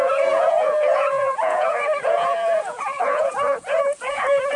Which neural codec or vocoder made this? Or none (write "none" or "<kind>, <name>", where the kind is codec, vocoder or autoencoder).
vocoder, Vocos